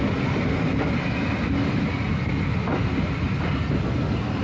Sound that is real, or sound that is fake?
real